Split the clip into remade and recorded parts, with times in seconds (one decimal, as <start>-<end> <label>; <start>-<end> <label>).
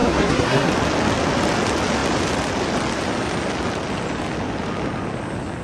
0.0-0.7 remade; 0.7-5.6 recorded